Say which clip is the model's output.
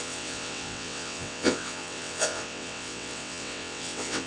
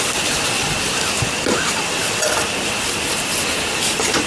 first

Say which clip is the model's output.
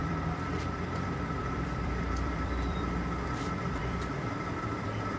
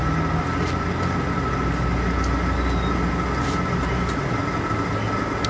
first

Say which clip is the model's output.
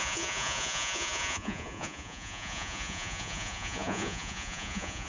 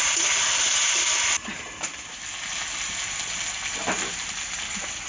first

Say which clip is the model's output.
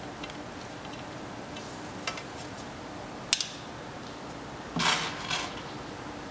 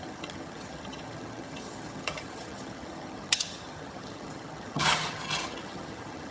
second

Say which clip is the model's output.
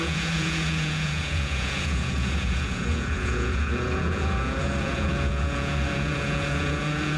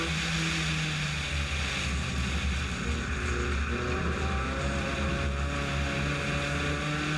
first